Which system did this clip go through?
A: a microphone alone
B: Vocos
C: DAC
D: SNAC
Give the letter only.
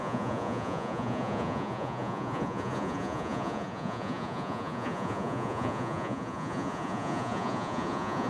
B